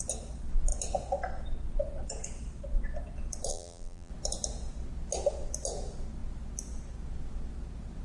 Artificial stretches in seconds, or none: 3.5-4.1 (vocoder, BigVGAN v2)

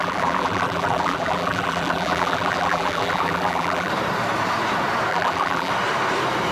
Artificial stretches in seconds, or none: 0.0-3.9 (vocoder, BigVGAN v2); 5.1-5.7

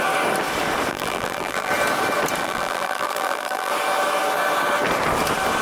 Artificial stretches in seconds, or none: 0.9-1.7 (vocoder, BigVGAN v2); 2.4-3.7

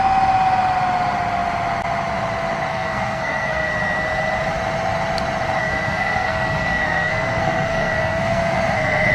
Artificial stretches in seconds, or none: 2.7-3.7 (codec, SNAC); 5.6-9.1

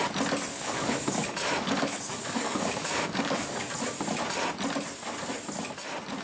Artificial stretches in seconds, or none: 0.5-3.7 (codec, DAC)

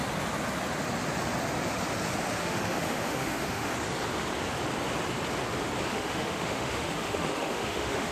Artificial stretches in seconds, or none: 2.4-3.7 (autoencoder, DAC-VAE); 5.9-8.1

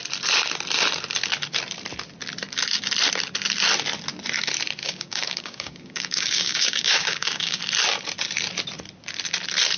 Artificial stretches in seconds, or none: 4.8-7.6 (codec, DAC)